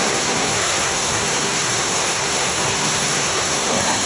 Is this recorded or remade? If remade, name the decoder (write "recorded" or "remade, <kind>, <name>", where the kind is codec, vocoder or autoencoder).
remade, codec, SNAC